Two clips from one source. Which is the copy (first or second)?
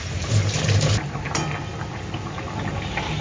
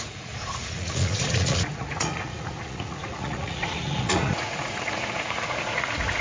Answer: second